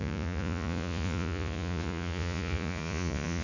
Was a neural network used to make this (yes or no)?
yes